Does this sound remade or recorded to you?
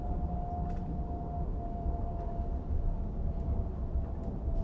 recorded